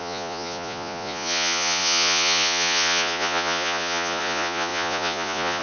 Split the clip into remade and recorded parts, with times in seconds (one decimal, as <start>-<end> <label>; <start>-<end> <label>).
0.0-5.6 remade